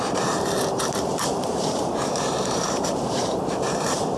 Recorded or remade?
remade